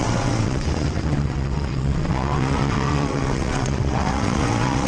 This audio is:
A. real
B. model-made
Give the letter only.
B